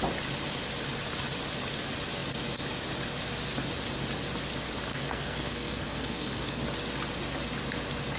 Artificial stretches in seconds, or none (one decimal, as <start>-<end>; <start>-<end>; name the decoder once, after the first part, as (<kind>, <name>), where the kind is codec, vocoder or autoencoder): 4.9-6.6 (codec, SNAC)